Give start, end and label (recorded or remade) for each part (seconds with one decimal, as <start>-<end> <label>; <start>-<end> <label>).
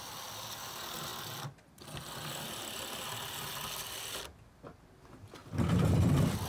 0.0-6.5 recorded